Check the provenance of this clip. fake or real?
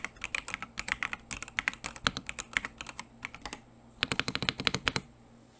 real